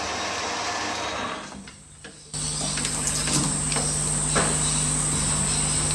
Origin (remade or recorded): recorded